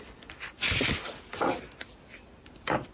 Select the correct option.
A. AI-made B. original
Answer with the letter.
A